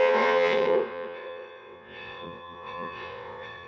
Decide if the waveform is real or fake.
fake